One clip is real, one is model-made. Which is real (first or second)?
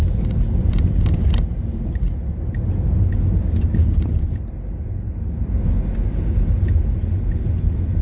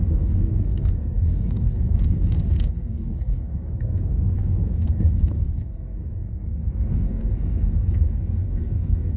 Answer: first